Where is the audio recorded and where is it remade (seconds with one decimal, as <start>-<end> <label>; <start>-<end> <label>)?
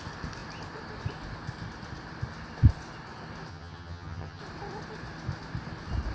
0.0-3.5 recorded; 3.5-4.4 remade; 4.4-6.1 recorded